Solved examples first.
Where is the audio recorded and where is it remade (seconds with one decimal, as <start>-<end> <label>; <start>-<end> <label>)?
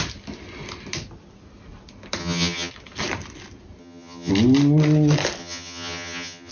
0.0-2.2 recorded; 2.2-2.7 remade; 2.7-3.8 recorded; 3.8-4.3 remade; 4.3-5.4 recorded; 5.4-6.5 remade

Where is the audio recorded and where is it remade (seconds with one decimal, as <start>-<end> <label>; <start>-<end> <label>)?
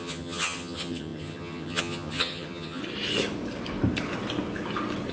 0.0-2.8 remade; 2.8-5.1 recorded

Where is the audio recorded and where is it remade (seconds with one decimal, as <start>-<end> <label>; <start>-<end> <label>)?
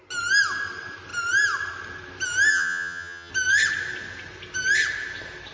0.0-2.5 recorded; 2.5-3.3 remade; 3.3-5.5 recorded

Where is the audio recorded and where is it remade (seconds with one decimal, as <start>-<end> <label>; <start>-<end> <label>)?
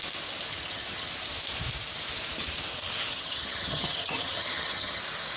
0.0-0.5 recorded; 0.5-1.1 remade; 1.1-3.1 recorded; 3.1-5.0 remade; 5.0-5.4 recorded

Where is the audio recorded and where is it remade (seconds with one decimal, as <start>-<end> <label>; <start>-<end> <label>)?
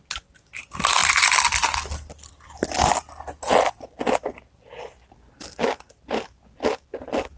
0.0-7.4 recorded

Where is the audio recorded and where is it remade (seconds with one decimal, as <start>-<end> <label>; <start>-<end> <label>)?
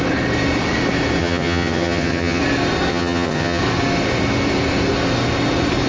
0.0-1.2 recorded; 1.2-2.4 remade; 2.4-2.9 recorded; 2.9-3.6 remade; 3.6-5.9 recorded